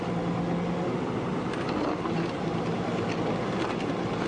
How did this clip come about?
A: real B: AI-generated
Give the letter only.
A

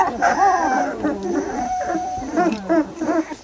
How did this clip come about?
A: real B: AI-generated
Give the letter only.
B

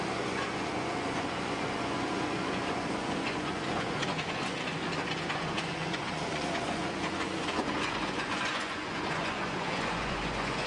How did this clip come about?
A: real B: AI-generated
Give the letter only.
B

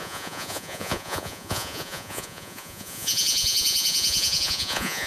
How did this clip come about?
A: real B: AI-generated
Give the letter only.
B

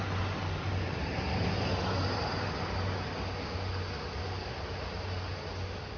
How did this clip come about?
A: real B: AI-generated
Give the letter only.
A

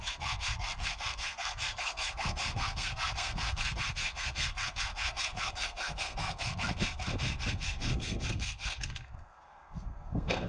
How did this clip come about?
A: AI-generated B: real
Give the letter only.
A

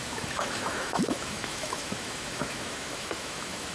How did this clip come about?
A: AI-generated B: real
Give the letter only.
A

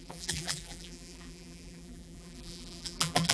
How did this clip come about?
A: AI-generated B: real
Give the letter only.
A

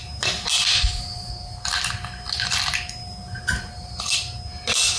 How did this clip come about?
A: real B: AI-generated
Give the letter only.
A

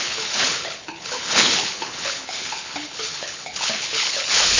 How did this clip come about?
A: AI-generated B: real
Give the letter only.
A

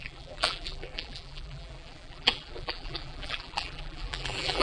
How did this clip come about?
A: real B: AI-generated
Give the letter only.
B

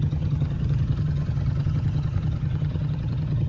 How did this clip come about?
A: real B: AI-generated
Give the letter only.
B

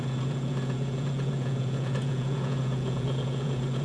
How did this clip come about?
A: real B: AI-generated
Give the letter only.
B